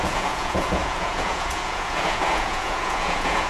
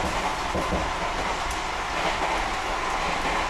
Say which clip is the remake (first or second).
first